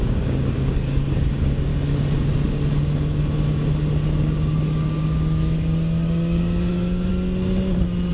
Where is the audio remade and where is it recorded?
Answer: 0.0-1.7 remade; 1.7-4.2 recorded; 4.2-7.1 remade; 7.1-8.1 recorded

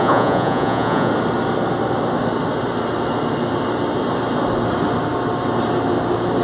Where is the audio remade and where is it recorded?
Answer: 0.0-1.1 remade; 1.1-6.4 recorded

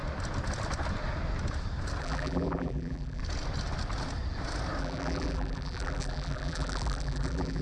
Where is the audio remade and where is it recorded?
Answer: 0.0-2.0 recorded; 2.0-3.2 remade; 3.2-4.8 recorded; 4.8-7.6 remade